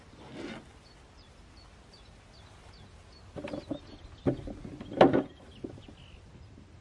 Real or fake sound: real